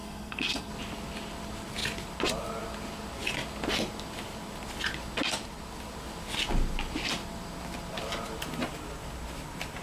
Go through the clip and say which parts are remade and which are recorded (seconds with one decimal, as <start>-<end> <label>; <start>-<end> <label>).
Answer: 0.0-0.7 remade; 0.7-9.8 recorded